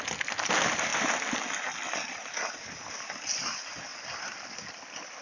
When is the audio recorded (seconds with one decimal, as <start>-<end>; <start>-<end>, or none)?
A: 0.0-5.2